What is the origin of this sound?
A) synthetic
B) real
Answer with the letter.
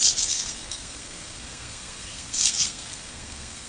A